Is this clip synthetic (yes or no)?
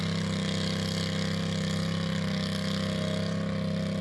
no